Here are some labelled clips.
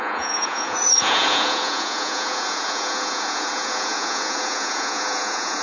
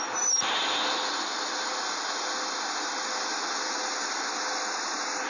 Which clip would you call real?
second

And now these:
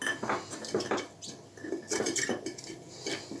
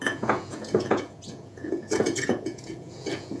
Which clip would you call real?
first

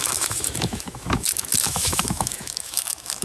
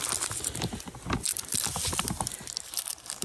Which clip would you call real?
second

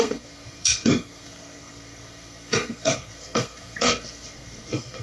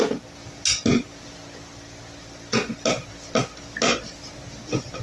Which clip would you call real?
second